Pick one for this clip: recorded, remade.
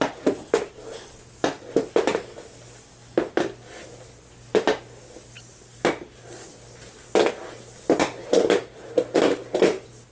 recorded